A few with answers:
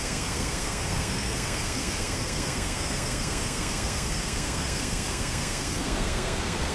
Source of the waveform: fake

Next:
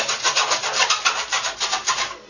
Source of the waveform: real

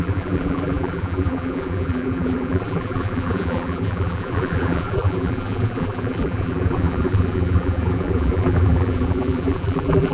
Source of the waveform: fake